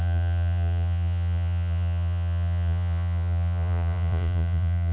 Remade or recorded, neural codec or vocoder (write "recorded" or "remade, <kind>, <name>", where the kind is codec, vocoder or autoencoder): remade, vocoder, Vocos